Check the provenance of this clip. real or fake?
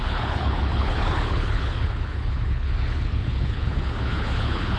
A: fake